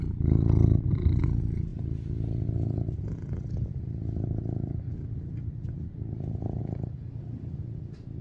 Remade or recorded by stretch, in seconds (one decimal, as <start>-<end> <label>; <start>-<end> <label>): 0.0-8.2 recorded